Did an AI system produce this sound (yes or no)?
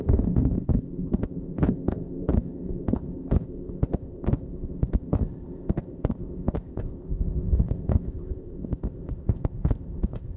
yes